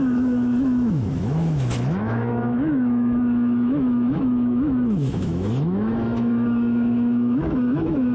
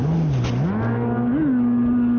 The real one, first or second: second